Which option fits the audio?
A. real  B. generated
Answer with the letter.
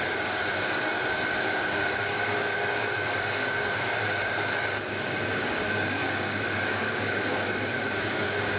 B